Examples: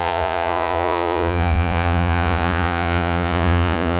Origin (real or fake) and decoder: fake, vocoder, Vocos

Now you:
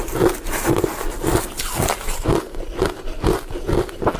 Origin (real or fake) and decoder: real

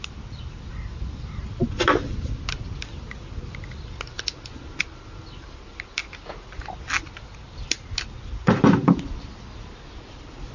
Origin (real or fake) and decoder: real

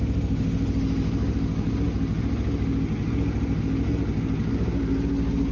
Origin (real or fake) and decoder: real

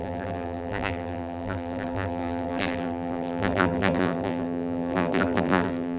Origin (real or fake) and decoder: fake, vocoder, BigVGAN v2